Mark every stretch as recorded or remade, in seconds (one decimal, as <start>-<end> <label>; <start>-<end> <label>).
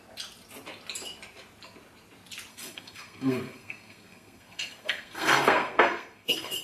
0.0-2.5 recorded; 2.5-6.6 remade